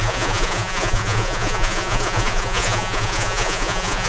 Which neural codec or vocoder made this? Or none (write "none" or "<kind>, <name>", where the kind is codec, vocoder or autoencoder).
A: vocoder, Vocos